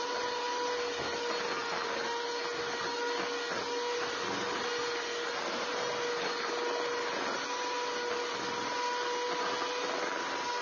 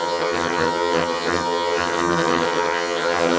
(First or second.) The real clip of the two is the first